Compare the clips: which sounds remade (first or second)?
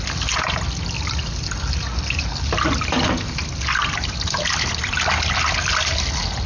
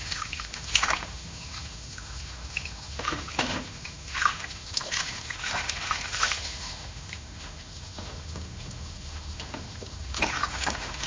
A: second